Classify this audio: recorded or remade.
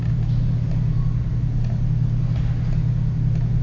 recorded